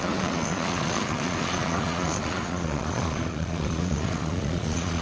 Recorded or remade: remade